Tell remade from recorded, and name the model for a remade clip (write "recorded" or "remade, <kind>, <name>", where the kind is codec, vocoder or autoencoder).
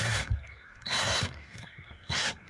remade, codec, SNAC